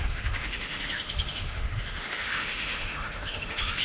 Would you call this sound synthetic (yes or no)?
yes